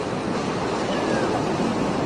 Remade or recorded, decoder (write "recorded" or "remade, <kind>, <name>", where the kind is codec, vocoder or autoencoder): recorded